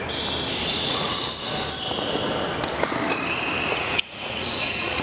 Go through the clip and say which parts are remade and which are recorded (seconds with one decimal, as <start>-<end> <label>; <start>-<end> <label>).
0.0-0.7 recorded; 0.7-1.2 remade; 1.2-3.7 recorded; 3.7-5.0 remade